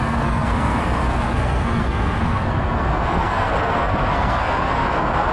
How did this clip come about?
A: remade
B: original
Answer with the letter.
A